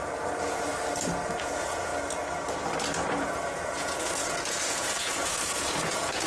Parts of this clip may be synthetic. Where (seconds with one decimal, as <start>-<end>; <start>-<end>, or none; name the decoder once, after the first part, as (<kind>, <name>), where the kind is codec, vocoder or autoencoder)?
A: 0.0-0.7 (vocoder, Vocos); 1.4-1.9; 3.1-6.3

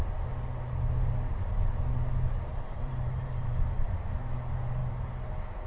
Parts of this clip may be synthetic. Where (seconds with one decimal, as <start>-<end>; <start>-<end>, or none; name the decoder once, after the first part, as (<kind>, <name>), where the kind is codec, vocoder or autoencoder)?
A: 2.5-3.9 (vocoder, BigVGAN v2)

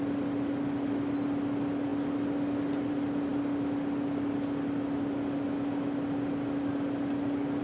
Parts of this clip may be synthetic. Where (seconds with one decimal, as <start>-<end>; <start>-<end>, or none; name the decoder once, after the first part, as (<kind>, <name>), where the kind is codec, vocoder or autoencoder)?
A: none

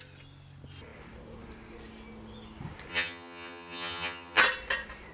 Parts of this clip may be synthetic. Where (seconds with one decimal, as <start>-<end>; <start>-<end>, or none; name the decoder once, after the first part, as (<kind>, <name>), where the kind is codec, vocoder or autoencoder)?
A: 2.9-4.4 (vocoder, HiFi-GAN)

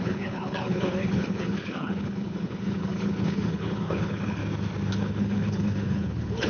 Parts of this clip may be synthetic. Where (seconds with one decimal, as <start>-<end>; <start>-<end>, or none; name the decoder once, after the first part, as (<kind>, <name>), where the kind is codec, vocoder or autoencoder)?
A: 0.0-4.4 (codec, HILCodec); 4.9-6.5